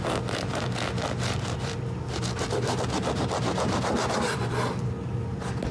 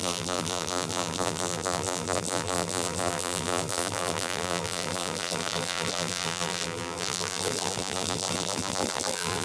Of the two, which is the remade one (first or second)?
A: second